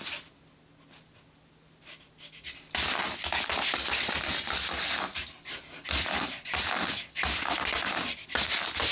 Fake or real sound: real